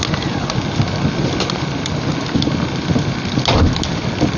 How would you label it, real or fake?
real